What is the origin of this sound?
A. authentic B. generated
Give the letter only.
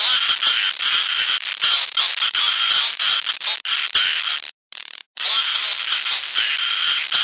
A